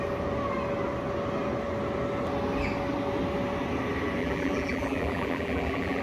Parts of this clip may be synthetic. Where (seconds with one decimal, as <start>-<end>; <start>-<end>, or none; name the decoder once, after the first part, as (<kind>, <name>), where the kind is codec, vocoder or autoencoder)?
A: 4.2-6.0 (vocoder, BigVGAN v2)